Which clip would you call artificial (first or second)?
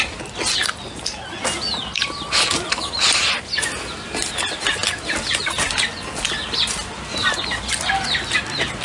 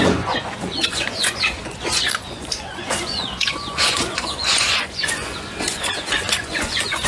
second